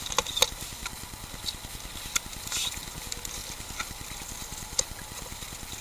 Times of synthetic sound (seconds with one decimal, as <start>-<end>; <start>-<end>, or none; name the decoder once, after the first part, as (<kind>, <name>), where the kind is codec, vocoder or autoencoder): none